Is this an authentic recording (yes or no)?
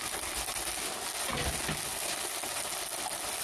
yes